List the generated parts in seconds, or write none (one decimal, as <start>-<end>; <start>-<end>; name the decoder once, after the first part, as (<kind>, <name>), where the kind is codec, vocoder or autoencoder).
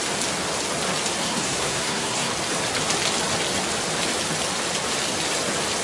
1.2-2.3 (codec, SNAC)